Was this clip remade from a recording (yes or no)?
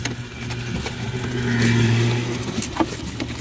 no